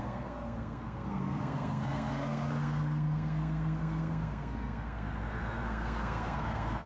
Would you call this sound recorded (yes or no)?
no